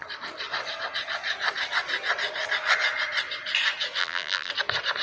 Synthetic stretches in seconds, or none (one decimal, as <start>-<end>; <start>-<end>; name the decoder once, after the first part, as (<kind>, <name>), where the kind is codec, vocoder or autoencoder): 4.0-4.5 (vocoder, BigVGAN v2)